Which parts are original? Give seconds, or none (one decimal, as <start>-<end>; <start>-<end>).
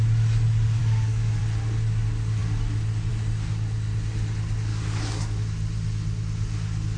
0.0-0.8; 1.4-4.7; 5.4-7.0